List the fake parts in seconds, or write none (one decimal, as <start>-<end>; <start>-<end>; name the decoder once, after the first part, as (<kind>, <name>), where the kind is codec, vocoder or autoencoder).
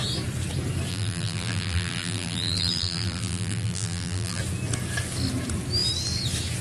0.9-4.4 (vocoder, BigVGAN v2)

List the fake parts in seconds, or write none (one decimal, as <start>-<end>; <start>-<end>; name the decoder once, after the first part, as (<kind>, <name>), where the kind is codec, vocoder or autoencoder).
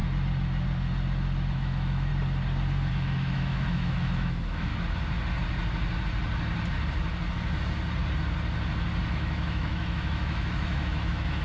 1.5-2.1 (autoencoder, DAC-VAE); 2.9-4.7; 9.1-11.4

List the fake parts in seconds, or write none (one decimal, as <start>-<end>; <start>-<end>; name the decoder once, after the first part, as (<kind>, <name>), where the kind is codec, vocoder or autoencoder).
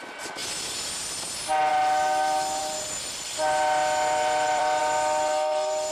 2.6-4.8 (vocoder, BigVGAN v2)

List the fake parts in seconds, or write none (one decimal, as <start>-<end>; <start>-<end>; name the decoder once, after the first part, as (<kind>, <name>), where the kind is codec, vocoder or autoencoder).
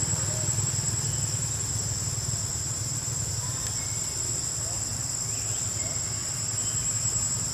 2.5-3.1 (vocoder, BigVGAN v2); 6.2-7.5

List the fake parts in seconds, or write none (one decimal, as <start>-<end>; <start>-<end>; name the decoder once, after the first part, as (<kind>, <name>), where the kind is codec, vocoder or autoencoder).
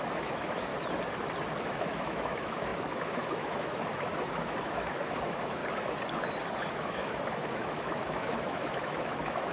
0.0-0.7 (autoencoder, DAC-VAE); 1.6-5.6; 6.7-9.5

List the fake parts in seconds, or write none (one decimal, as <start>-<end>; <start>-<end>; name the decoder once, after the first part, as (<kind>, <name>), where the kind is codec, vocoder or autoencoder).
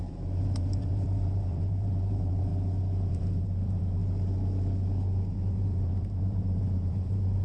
0.0-2.5 (vocoder, BigVGAN v2); 3.1-4.0; 5.3-7.4